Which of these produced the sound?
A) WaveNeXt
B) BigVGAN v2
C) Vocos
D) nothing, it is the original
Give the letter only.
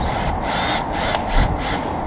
D